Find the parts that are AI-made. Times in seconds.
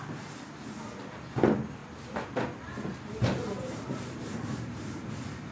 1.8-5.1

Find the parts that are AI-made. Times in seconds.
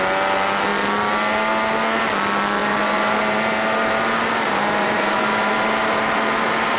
2.6-6.8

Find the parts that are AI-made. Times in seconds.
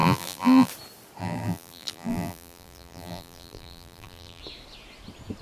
0.0-0.7; 1.2-4.4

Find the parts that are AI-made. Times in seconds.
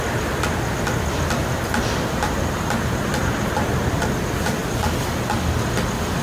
1.4-3.7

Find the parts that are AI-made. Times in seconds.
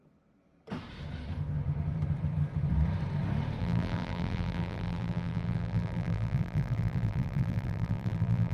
3.6-8.5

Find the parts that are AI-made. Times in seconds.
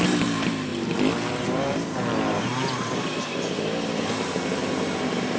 0.0-0.7; 1.3-5.4